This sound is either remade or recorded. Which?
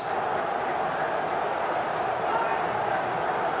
recorded